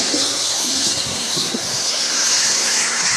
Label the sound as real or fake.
fake